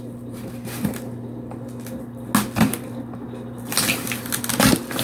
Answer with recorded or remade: recorded